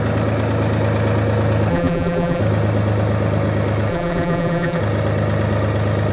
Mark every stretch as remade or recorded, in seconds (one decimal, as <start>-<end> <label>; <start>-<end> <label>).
0.0-1.7 recorded; 1.7-2.4 remade; 2.4-3.9 recorded; 3.9-4.8 remade; 4.8-6.1 recorded